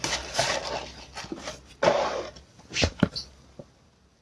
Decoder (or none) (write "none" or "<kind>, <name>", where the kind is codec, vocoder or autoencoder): none